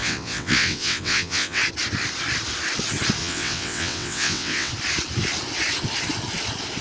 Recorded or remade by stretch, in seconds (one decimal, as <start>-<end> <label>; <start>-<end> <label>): 0.0-1.6 remade; 1.6-3.2 recorded; 3.2-4.7 remade; 4.7-6.8 recorded